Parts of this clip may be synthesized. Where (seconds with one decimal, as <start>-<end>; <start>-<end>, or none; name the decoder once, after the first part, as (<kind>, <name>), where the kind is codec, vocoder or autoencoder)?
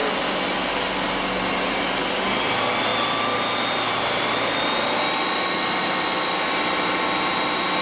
none